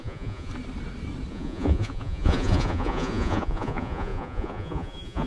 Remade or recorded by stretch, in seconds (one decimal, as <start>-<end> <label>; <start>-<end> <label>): 0.0-0.5 remade; 0.5-1.3 recorded; 1.3-5.3 remade

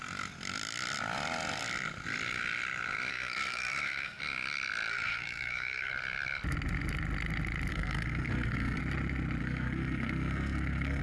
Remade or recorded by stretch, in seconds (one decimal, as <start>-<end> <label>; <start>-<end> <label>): 0.0-3.1 recorded; 3.1-4.2 remade; 4.2-4.9 recorded; 4.9-5.9 remade; 5.9-7.7 recorded; 7.7-8.8 remade; 8.8-9.4 recorded; 9.4-11.0 remade

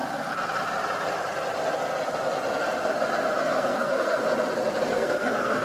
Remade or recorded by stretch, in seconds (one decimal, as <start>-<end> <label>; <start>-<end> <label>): 0.0-3.4 recorded; 3.4-4.2 remade; 4.2-4.9 recorded; 4.9-5.6 remade

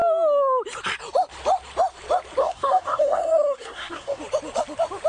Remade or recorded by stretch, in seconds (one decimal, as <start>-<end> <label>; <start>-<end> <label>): 0.0-2.4 recorded; 2.4-4.2 remade; 4.2-5.1 recorded

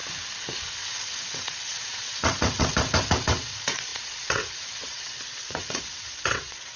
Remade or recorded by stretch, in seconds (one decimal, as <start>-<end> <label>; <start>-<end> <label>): 0.0-0.7 recorded; 0.7-6.8 remade

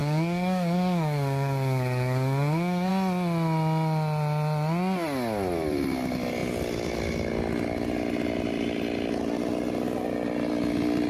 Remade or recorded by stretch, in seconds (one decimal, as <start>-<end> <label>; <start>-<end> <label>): 0.0-2.9 remade; 2.9-11.1 recorded